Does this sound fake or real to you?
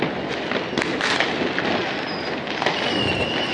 real